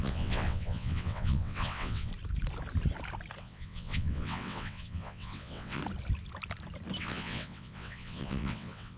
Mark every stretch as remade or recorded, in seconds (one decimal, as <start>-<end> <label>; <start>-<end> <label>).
0.0-2.1 remade; 2.1-3.4 recorded; 3.4-5.8 remade; 5.8-7.0 recorded; 7.0-9.0 remade